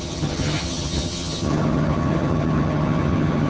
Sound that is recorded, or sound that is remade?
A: remade